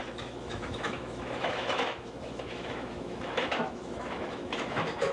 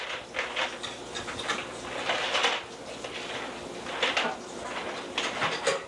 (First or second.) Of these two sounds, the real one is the second